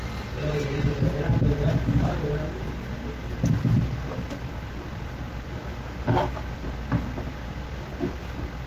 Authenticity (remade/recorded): recorded